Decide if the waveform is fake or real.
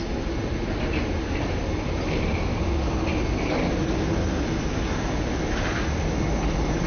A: real